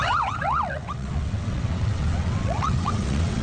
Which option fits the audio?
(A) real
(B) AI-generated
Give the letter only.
B